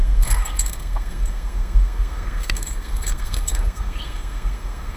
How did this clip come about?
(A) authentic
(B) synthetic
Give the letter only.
B